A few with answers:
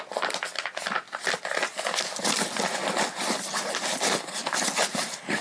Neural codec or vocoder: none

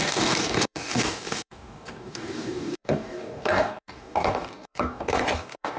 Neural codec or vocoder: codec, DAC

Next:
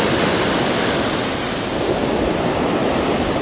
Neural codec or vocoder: none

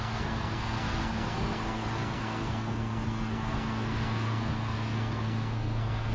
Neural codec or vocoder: codec, SNAC